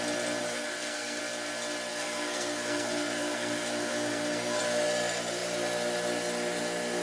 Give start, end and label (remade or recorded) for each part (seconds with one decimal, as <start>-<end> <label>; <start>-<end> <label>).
0.0-0.4 recorded; 0.4-1.2 remade; 1.2-1.9 recorded; 1.9-4.6 remade; 4.6-7.0 recorded